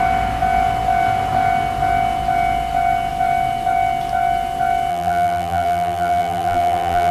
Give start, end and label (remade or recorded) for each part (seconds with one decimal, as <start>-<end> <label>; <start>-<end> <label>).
0.0-4.9 recorded; 4.9-7.1 remade